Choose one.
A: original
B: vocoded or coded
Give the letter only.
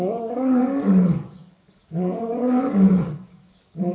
B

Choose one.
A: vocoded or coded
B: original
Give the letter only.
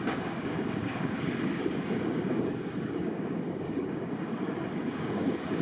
A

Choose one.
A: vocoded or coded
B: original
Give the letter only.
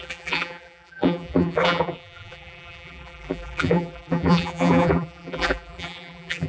A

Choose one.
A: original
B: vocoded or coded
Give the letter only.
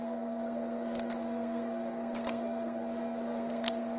B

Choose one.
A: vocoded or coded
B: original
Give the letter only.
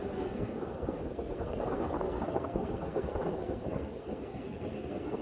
A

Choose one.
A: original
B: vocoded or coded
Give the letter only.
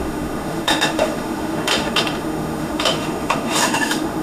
B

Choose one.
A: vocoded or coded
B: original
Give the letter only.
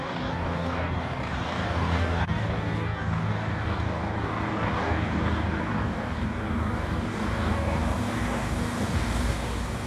A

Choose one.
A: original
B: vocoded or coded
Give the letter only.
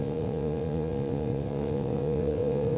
B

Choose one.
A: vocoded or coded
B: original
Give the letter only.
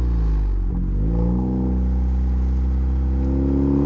B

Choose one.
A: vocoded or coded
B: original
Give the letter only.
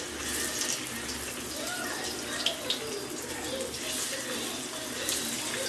B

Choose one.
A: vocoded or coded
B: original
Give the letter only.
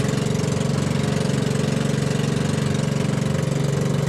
B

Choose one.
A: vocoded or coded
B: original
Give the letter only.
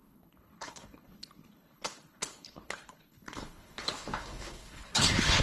A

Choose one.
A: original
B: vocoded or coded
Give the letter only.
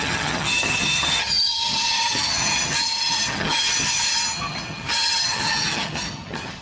B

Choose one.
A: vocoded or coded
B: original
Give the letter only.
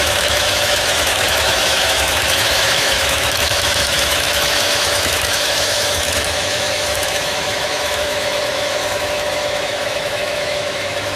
A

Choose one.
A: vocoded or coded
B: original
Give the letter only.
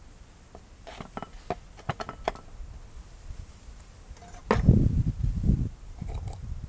B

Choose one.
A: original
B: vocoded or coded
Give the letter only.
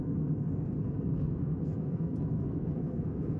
B